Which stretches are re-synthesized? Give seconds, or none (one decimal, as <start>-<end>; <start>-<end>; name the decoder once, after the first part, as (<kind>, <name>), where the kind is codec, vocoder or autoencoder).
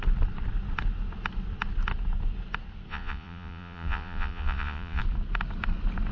2.9-5.0 (vocoder, Vocos)